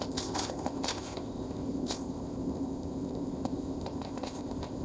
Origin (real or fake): fake